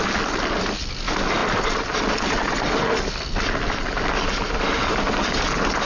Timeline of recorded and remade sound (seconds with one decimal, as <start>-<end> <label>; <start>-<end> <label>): 0.0-5.9 recorded